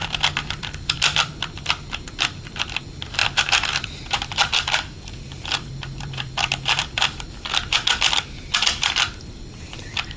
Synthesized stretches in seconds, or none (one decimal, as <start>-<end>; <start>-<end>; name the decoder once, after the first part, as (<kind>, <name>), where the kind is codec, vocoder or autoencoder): 0.0-10.2 (vocoder, BigVGAN v2)